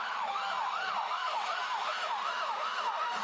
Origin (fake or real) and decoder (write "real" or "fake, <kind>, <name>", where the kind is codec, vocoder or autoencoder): fake, autoencoder, DAC-VAE